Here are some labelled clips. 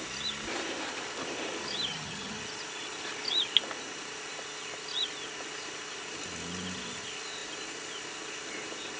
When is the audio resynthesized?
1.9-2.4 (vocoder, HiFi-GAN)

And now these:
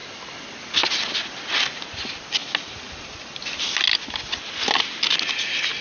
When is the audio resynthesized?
none

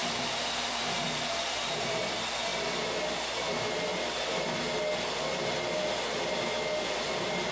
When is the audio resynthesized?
0.0-1.9 (vocoder, BigVGAN v2)

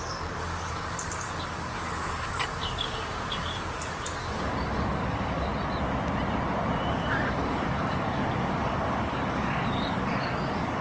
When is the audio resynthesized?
0.0-5.5 (codec, DAC); 6.9-10.8